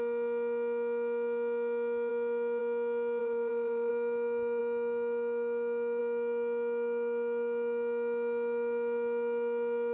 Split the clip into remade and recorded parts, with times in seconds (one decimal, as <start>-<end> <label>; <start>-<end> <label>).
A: 0.0-3.2 recorded; 3.2-3.9 remade; 3.9-9.9 recorded